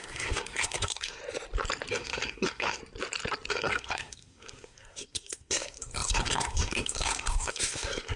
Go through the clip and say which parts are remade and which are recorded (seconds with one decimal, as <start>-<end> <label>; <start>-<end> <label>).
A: 0.0-1.2 remade; 1.2-1.9 recorded; 1.9-2.8 remade; 2.8-3.5 recorded; 3.5-8.2 remade